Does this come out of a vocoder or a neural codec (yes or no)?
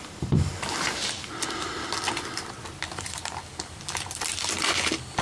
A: yes